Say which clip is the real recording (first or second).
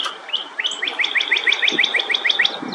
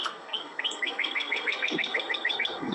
first